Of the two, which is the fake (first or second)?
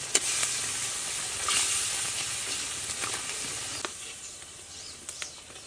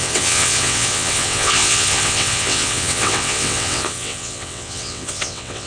second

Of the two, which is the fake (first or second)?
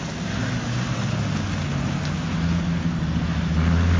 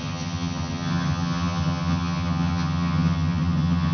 second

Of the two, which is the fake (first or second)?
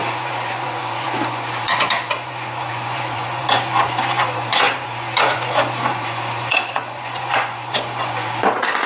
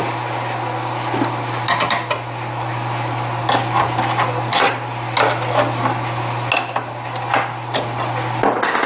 first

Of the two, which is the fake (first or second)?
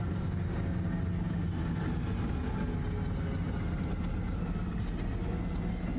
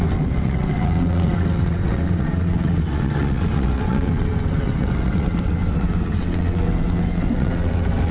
second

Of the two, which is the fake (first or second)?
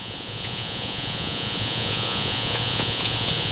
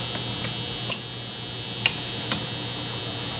first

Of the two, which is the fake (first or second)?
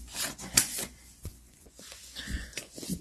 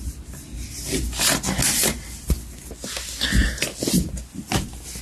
first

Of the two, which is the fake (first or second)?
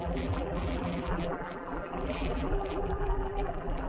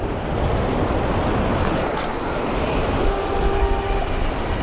first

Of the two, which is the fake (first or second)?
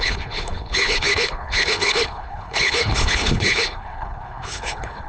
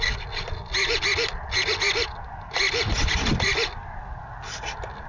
first